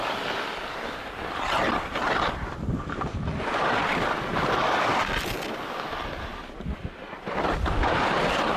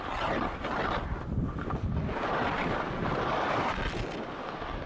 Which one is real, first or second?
second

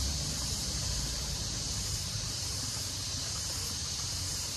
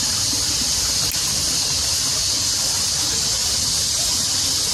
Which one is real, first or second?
second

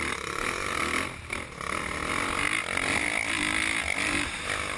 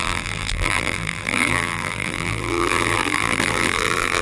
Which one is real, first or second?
first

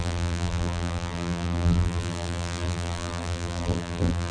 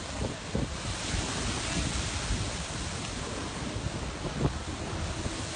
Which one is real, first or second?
second